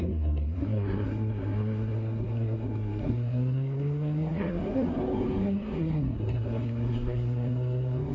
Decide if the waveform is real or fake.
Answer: fake